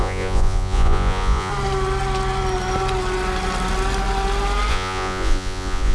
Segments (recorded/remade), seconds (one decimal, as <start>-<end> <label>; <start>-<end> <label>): 0.0-1.5 remade; 1.5-4.7 recorded; 4.7-5.9 remade